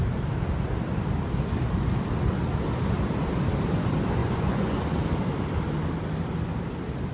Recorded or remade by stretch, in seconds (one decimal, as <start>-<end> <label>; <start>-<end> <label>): 0.0-4.2 recorded; 4.2-4.8 remade; 4.8-7.1 recorded